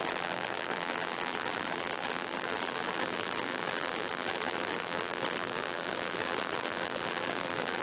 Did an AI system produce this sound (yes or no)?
yes